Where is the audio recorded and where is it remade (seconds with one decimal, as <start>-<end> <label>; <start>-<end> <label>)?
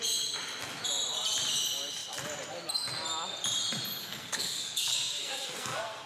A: 0.0-4.0 recorded; 4.0-6.1 remade